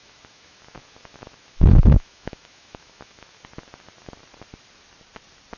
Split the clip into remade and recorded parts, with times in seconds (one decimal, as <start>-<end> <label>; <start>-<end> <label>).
0.0-3.4 remade; 3.4-5.6 recorded